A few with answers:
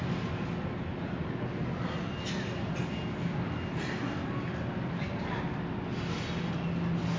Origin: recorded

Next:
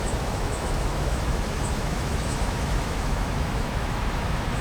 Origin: remade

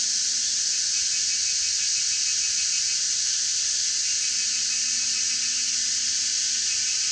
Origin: recorded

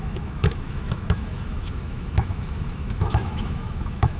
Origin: remade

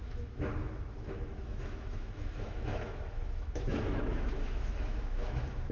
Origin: remade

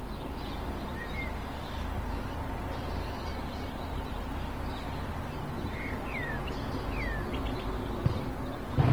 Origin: recorded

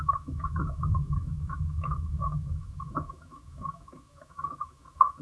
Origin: remade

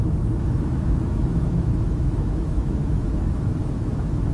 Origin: remade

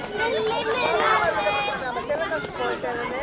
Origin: recorded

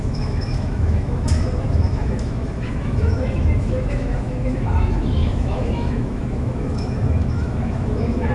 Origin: remade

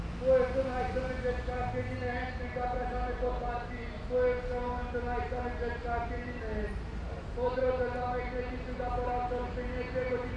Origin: recorded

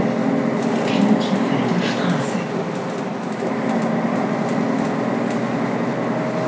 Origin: recorded